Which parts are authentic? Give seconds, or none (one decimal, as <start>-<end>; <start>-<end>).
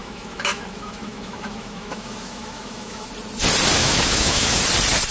3.1-3.8; 4.6-5.1